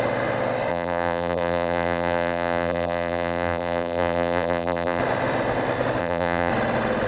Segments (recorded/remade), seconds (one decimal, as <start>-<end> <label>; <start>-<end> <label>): 0.0-0.7 recorded; 0.7-5.0 remade; 5.0-6.0 recorded; 6.0-6.5 remade; 6.5-7.1 recorded